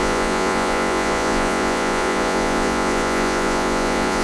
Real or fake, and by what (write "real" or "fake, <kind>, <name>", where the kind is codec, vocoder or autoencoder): fake, vocoder, Vocos